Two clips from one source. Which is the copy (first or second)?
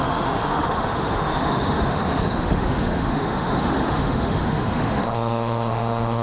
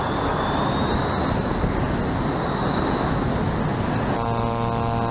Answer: first